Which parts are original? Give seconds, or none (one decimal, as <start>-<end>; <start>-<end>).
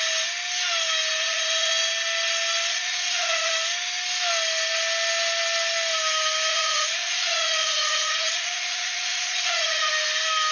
0.0-1.2; 1.7-2.7; 3.5-6.5; 9.9-10.5